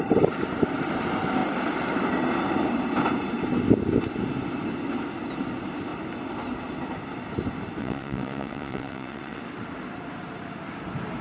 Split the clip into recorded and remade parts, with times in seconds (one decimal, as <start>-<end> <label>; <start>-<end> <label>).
0.0-7.8 recorded; 7.8-9.4 remade; 9.4-11.2 recorded